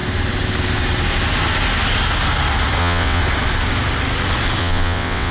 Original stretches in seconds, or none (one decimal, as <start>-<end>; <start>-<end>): 0.0-2.8; 3.2-4.6